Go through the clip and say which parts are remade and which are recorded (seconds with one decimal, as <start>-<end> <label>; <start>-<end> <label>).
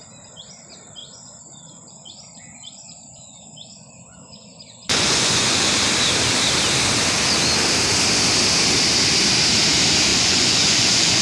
0.0-1.0 recorded; 1.0-5.7 remade; 5.7-10.1 recorded; 10.1-11.2 remade